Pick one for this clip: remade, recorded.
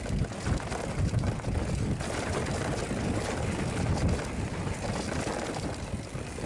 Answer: recorded